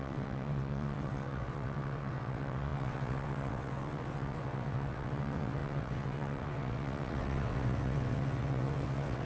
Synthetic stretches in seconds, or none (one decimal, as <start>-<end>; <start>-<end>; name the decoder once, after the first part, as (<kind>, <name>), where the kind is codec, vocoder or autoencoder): 0.0-9.3 (vocoder, WaveNeXt)